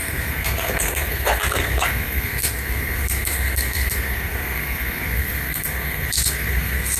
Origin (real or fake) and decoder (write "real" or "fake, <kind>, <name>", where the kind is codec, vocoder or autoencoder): fake, codec, SNAC